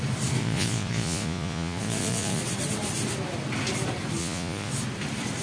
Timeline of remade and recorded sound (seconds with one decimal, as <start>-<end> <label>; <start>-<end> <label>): 0.0-0.4 recorded; 0.4-2.4 remade; 2.4-4.2 recorded; 4.2-4.7 remade; 4.7-5.4 recorded